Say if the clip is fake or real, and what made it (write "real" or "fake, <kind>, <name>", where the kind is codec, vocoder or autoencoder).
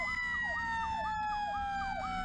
real